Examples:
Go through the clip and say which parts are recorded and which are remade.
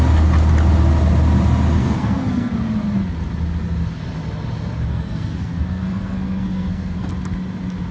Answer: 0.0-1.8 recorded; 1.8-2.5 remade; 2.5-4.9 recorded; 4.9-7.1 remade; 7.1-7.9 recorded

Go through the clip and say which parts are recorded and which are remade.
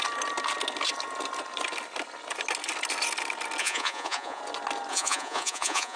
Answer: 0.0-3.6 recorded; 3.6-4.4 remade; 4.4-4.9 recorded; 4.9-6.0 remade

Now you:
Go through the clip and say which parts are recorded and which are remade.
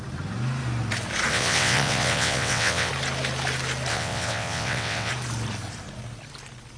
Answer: 0.0-1.3 recorded; 1.3-2.9 remade; 2.9-3.9 recorded; 3.9-5.1 remade; 5.1-6.8 recorded